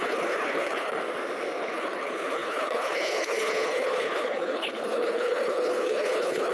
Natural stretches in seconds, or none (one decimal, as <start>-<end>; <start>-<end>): 1.0-1.6